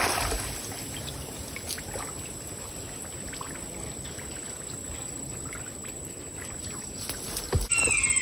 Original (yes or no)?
yes